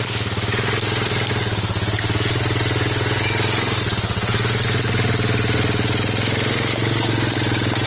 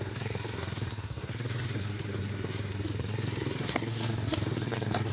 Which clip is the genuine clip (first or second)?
first